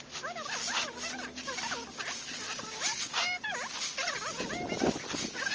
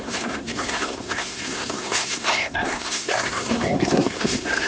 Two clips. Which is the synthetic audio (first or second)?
second